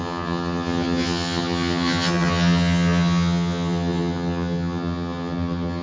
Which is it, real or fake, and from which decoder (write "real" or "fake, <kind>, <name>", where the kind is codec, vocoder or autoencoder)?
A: fake, vocoder, HiFi-GAN